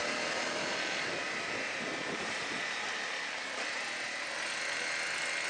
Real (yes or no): yes